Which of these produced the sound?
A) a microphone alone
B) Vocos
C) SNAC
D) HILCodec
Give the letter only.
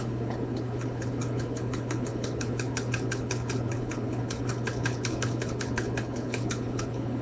D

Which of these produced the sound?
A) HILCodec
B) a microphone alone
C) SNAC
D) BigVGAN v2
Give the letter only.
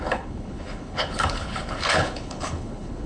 A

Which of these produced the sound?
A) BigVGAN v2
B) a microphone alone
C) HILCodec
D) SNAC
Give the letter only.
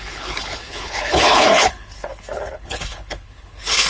C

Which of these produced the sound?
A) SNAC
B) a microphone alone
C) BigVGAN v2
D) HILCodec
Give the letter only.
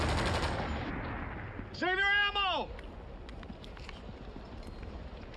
B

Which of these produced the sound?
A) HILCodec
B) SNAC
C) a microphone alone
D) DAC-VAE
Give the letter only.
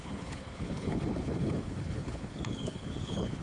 A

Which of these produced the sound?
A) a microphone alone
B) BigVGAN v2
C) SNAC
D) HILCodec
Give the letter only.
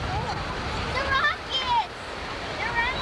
A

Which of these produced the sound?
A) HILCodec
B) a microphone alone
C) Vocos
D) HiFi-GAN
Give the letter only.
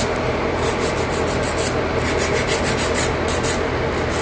B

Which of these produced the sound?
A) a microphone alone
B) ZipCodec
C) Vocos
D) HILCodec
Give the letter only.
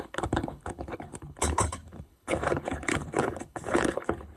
D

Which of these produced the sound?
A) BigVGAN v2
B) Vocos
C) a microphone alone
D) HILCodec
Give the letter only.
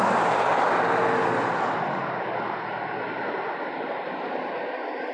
C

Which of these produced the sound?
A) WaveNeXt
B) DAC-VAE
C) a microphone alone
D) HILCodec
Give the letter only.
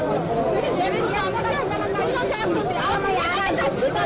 C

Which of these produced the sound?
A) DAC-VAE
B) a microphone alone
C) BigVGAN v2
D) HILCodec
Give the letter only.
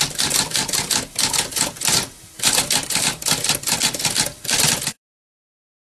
B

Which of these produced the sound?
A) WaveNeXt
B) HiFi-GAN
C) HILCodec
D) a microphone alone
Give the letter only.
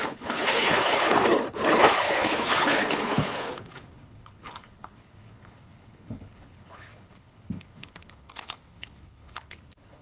C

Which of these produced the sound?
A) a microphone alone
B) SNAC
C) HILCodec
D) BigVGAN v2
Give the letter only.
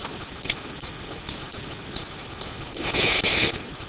A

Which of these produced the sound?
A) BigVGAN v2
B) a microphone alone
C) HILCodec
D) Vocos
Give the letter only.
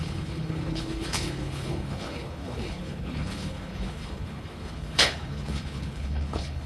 C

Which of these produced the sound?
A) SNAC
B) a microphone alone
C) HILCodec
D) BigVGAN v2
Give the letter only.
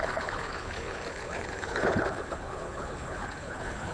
C